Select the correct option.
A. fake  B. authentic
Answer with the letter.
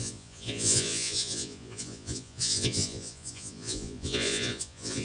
A